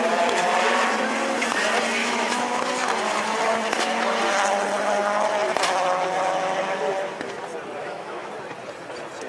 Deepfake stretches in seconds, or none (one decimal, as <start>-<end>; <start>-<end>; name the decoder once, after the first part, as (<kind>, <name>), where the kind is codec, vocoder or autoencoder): 2.0-2.6 (autoencoder, DAC-VAE); 7.8-8.3